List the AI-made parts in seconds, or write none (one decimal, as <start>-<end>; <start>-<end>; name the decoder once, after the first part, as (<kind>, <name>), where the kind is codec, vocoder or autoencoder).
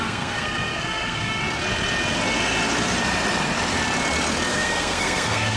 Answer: 0.0-1.4 (codec, SNAC); 4.5-5.6